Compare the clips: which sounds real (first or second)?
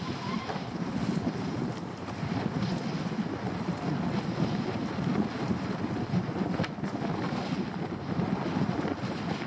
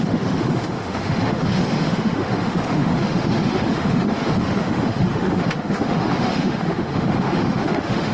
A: first